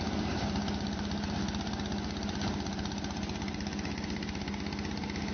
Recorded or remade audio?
recorded